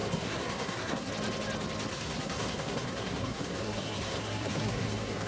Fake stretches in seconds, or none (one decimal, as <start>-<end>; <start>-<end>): 0.0-1.1; 1.9-5.3